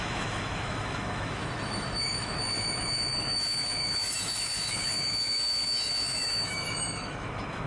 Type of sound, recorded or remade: remade